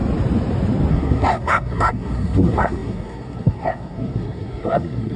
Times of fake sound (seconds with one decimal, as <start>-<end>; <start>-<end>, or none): 0.9-5.2